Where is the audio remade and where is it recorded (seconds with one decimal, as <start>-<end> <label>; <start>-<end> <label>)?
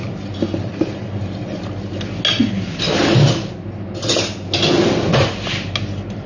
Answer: 0.0-6.3 recorded